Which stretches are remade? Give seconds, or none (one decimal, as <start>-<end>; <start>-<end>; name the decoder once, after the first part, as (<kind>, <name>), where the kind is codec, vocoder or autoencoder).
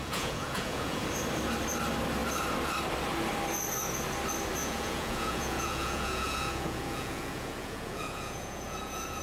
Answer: 0.0-1.0 (vocoder, Vocos); 4.6-9.2